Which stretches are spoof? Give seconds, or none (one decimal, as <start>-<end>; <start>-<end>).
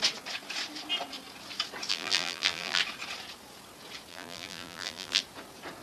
1.9-2.8; 4.1-5.2